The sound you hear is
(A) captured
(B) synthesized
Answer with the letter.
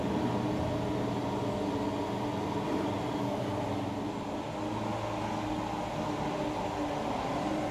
A